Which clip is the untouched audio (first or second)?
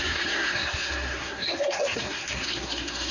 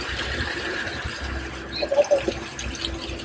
second